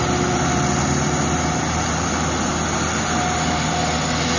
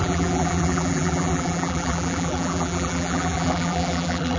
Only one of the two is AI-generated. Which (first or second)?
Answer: second